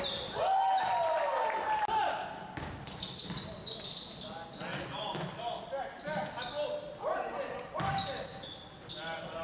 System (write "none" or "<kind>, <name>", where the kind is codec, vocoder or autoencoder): none